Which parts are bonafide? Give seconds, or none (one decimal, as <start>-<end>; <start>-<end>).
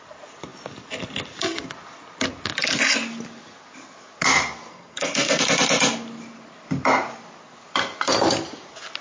0.0-4.7; 5.4-9.0